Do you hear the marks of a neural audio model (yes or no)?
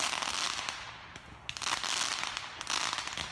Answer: no